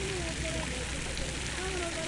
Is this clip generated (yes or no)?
no